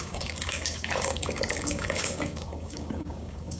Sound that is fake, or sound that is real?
fake